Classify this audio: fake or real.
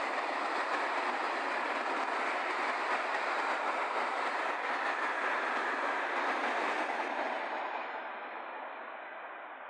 real